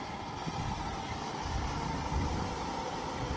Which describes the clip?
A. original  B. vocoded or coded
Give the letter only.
A